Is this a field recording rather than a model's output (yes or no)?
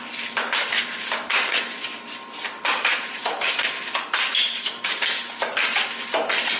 yes